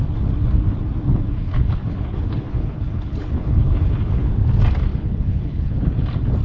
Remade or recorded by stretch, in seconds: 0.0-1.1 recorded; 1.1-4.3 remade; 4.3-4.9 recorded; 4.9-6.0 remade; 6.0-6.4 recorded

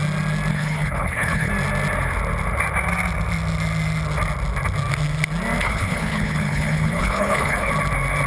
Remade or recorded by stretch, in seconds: 0.0-0.5 recorded; 0.5-1.5 remade; 1.5-5.6 recorded; 5.6-7.7 remade; 7.7-8.3 recorded

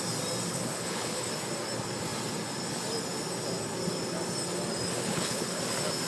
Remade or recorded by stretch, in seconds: 0.0-0.5 recorded; 0.5-1.3 remade; 1.3-5.0 recorded; 5.0-5.6 remade; 5.6-6.1 recorded

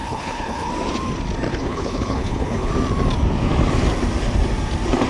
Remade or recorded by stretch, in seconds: 0.0-0.7 remade; 0.7-1.5 recorded; 1.5-2.7 remade; 2.7-5.1 recorded

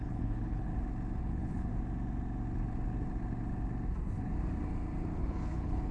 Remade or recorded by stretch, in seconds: 0.0-0.7 remade; 0.7-1.2 recorded; 1.2-1.7 remade; 1.7-5.2 recorded; 5.2-5.9 remade

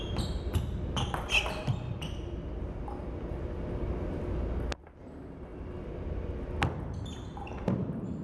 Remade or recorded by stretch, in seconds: 0.0-8.2 recorded

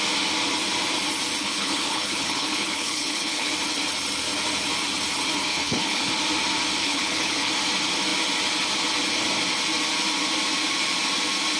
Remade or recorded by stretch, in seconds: 0.0-1.4 recorded; 1.4-3.5 remade; 3.5-5.5 recorded; 5.5-6.1 remade; 6.1-6.8 recorded; 6.8-7.5 remade; 7.5-11.6 recorded

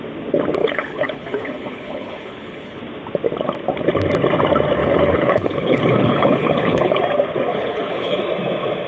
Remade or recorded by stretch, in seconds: 0.0-0.6 recorded; 0.6-2.8 remade; 2.8-4.8 recorded; 4.8-7.0 remade; 7.0-7.5 recorded; 7.5-8.2 remade; 8.2-8.9 recorded